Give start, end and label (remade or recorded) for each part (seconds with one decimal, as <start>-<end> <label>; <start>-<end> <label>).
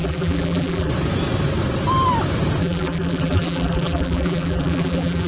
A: 0.0-0.9 remade; 0.9-2.6 recorded; 2.6-5.3 remade